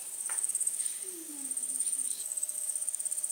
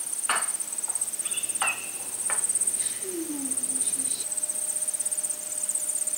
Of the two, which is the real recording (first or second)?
second